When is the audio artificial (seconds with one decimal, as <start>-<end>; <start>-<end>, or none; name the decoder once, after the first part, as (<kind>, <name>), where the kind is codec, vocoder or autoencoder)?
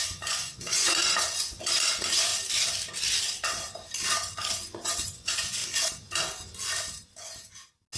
0.0-2.3 (vocoder, Vocos); 4.5-5.6